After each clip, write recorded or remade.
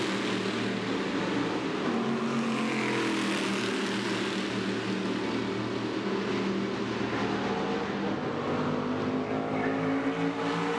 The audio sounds recorded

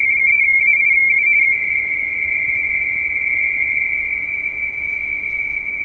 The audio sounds remade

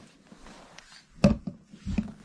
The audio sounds recorded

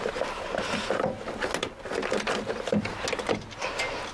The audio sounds recorded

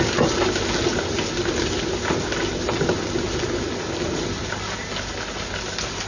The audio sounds recorded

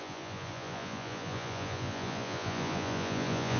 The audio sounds remade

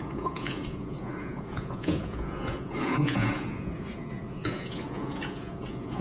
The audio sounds remade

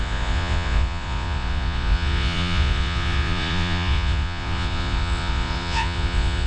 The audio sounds remade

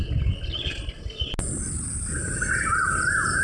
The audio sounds recorded